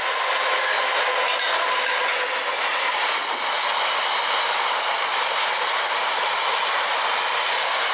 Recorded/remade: recorded